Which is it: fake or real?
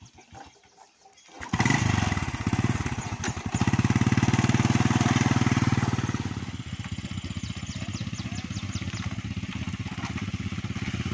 real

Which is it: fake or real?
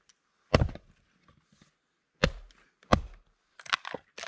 real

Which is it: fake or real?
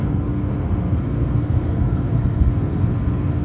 fake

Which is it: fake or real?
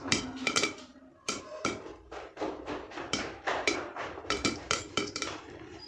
fake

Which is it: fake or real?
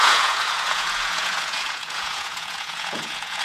fake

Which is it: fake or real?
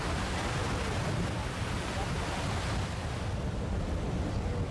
real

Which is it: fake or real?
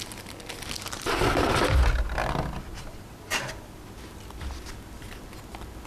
real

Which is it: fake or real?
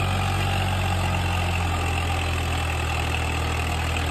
real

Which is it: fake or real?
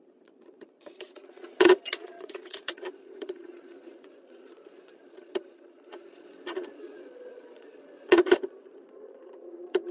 fake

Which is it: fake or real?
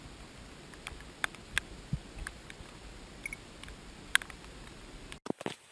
real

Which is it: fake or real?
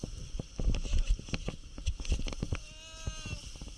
real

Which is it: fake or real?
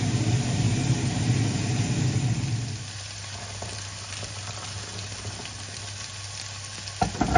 real